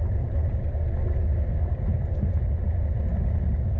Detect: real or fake real